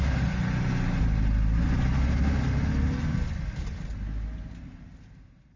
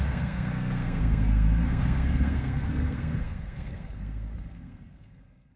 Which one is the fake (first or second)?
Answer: second